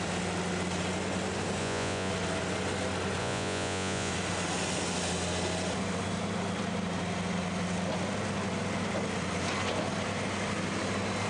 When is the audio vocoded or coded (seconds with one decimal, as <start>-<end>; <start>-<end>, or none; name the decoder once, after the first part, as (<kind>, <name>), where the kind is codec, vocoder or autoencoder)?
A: 1.6-2.1 (vocoder, Vocos); 3.2-4.1